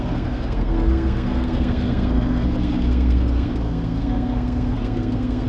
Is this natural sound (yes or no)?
no